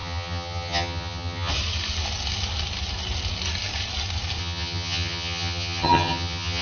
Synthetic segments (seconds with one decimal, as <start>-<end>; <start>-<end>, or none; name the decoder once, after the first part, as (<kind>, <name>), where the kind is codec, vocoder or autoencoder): 0.0-1.5 (vocoder, HiFi-GAN); 4.4-6.6